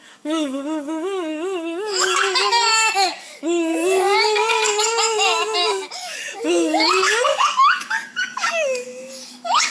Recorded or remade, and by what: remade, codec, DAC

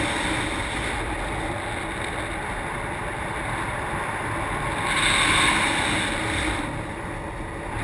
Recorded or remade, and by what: recorded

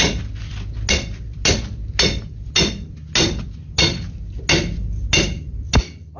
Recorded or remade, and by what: recorded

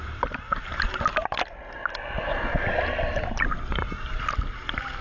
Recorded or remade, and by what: recorded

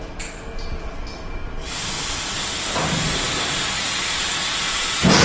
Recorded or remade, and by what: recorded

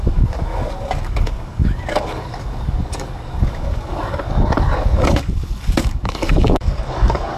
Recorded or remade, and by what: remade, codec, DAC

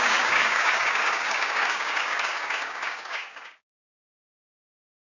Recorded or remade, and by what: remade, codec, DAC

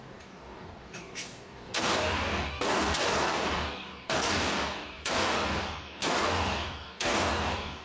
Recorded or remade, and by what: remade, codec, DAC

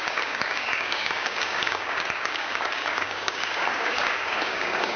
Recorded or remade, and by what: remade, codec, DAC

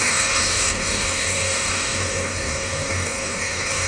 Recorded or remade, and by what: remade, codec, DAC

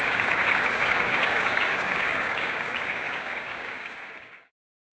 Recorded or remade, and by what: remade, codec, DAC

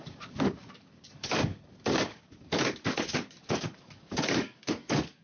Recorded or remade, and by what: remade, codec, DAC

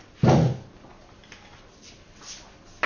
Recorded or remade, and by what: recorded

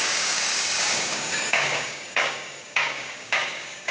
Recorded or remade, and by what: remade, codec, DAC